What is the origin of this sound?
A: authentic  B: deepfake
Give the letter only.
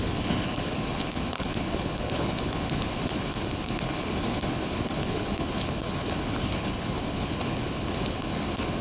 B